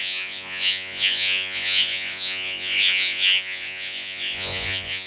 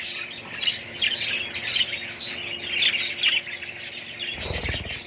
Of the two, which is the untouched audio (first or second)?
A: second